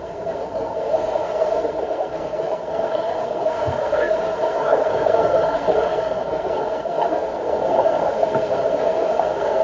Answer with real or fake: fake